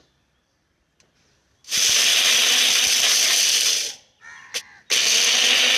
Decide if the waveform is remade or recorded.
recorded